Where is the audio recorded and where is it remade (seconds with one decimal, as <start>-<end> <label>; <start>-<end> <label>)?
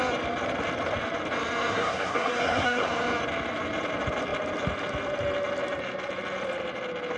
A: 0.0-1.7 recorded; 1.7-2.9 remade; 2.9-7.2 recorded